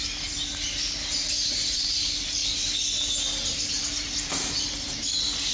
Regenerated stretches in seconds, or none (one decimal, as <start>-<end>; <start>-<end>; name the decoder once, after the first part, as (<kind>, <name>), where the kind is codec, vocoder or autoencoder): 0.0-2.4 (vocoder, BigVGAN v2); 3.8-5.5